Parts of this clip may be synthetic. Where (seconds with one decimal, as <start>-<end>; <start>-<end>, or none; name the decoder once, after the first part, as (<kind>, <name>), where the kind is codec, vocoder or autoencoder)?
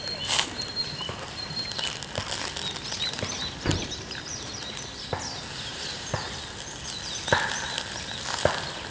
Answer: 0.8-1.7 (vocoder, BigVGAN v2); 3.7-4.7; 5.7-6.4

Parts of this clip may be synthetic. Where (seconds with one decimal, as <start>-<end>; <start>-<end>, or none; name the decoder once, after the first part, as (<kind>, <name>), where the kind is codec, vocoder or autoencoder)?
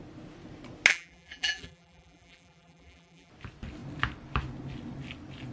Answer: 0.9-3.3 (vocoder, BigVGAN v2)